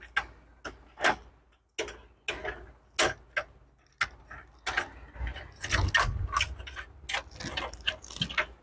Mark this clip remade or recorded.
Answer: recorded